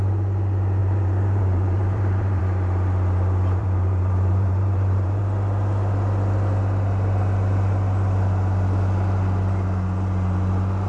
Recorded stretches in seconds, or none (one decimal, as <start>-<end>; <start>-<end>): 0.0-0.8; 2.4-3.6; 5.2-10.9